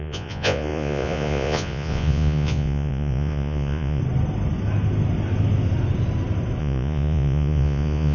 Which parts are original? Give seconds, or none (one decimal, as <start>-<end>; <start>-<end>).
4.0-6.6